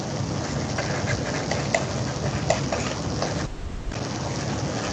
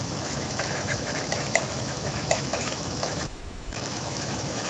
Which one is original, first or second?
first